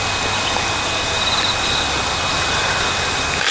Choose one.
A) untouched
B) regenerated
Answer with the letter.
A